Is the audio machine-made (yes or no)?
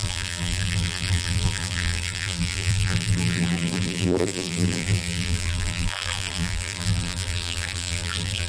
yes